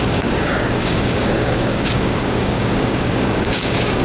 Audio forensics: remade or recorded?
remade